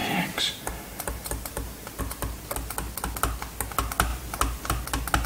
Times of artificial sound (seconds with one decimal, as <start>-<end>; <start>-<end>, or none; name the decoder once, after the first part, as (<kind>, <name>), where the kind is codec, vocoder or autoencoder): 0.0-2.0 (vocoder, BigVGAN v2)